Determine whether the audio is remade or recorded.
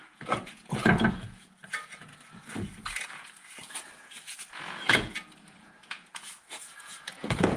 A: remade